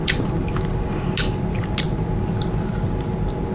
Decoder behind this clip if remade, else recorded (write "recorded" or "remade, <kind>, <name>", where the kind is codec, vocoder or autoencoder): recorded